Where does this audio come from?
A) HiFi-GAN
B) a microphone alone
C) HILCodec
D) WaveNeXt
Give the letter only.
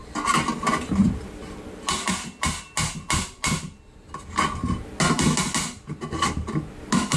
B